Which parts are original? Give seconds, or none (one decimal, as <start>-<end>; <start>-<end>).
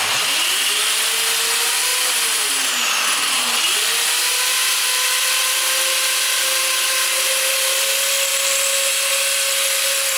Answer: 0.0-10.2